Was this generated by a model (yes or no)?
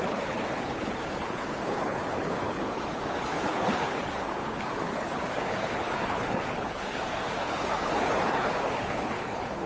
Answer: yes